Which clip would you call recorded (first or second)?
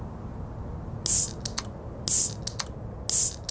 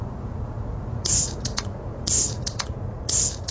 first